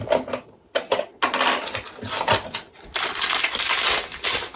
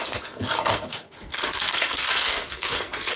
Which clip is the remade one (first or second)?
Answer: second